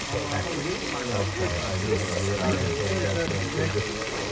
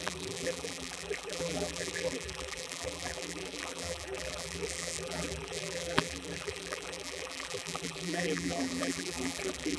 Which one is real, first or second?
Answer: first